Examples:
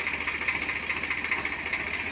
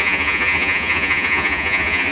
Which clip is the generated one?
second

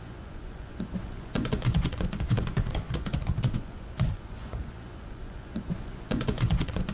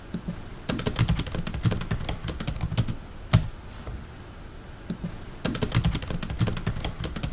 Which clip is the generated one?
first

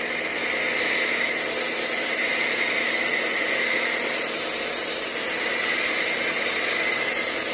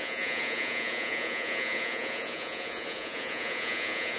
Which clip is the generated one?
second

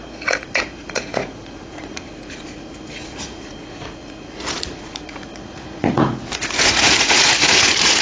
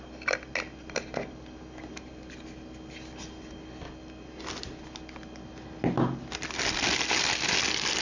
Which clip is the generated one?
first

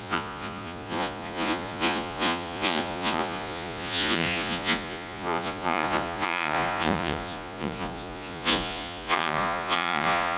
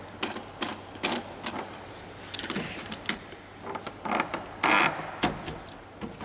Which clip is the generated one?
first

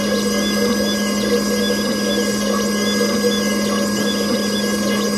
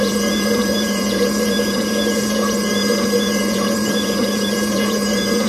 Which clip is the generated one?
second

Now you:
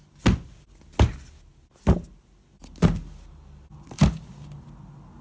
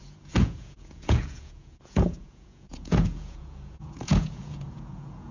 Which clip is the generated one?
second